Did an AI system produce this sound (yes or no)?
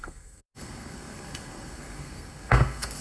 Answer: yes